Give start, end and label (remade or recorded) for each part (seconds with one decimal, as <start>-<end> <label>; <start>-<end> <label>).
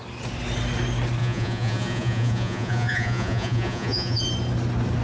0.0-1.2 recorded; 1.2-4.2 remade; 4.2-5.0 recorded